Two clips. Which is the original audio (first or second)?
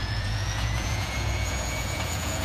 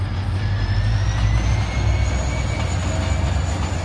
second